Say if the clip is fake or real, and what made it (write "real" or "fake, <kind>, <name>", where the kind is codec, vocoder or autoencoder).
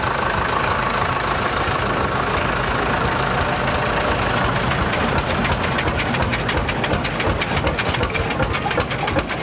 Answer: real